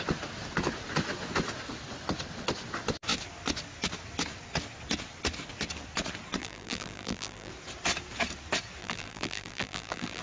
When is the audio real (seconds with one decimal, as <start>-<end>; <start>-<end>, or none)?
0.0-6.4; 7.5-8.8